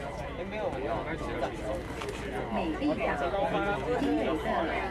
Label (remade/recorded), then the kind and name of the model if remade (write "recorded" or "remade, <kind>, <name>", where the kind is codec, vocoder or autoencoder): recorded